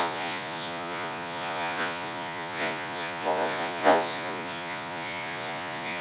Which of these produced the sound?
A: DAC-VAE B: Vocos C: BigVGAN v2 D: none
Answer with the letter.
B